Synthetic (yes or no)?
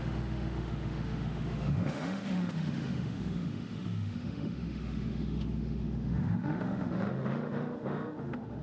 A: yes